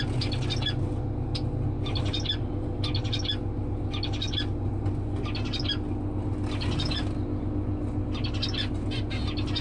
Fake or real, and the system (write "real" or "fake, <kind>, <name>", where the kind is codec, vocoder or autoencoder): real